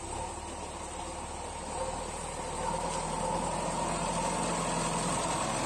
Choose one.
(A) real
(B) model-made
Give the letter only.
A